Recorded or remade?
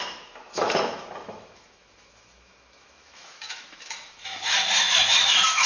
remade